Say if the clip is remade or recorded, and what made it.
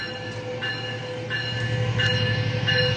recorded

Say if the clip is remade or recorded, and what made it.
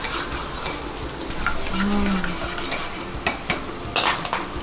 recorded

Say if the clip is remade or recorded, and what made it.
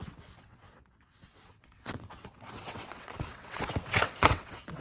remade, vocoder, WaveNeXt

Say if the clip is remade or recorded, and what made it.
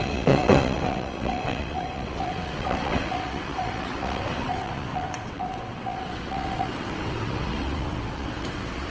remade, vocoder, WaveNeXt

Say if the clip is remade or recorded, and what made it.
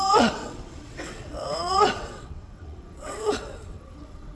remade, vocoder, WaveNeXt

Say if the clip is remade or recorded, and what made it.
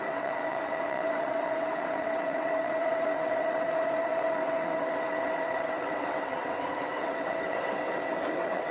remade, vocoder, WaveNeXt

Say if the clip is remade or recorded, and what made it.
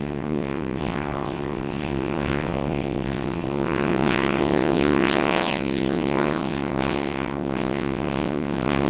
remade, vocoder, WaveNeXt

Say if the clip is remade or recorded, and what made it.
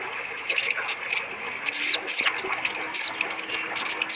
recorded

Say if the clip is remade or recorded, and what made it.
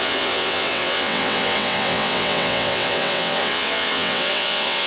remade, vocoder, WaveNeXt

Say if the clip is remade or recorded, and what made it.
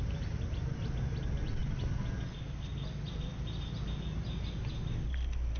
recorded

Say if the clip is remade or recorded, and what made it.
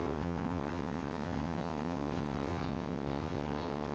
remade, vocoder, WaveNeXt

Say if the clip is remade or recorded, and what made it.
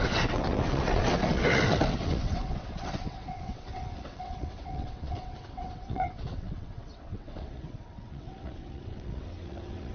remade, vocoder, WaveNeXt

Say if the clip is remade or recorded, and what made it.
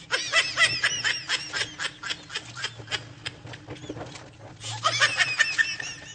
recorded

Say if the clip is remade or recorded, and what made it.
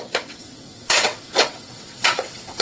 remade, vocoder, WaveNeXt